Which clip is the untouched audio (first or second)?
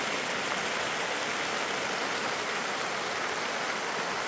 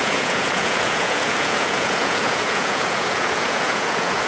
first